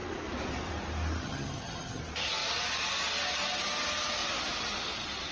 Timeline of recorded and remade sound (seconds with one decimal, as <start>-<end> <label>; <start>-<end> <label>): 0.0-1.2 recorded; 1.2-2.0 remade; 2.0-5.3 recorded

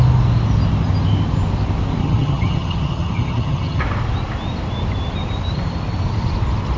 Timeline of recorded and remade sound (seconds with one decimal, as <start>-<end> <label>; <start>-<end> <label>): 0.0-2.0 recorded; 2.0-3.8 remade; 3.8-6.8 recorded

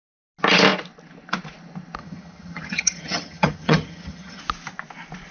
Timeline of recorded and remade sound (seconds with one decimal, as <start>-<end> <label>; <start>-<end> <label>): 0.0-2.0 recorded; 2.0-4.4 remade; 4.4-5.3 recorded

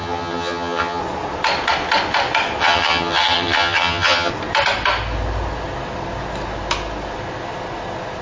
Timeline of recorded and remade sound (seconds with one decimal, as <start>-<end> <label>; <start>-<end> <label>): 0.0-1.0 remade; 1.0-2.6 recorded; 2.6-4.3 remade; 4.3-8.2 recorded